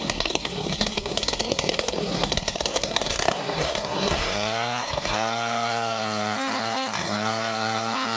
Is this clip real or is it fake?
fake